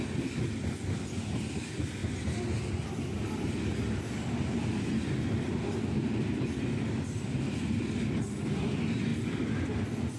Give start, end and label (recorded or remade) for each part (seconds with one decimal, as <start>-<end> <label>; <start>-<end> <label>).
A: 0.0-10.2 recorded